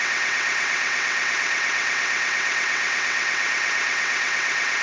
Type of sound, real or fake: fake